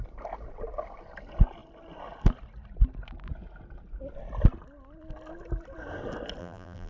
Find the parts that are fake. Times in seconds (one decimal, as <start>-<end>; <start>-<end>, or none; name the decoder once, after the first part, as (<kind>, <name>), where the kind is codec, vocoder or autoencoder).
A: 6.4-6.9 (vocoder, BigVGAN v2)